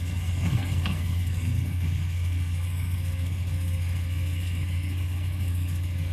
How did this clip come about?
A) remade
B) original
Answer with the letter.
A